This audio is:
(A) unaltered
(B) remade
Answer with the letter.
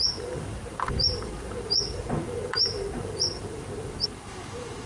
B